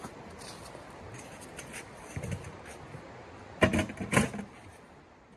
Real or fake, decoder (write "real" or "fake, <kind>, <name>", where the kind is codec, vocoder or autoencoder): real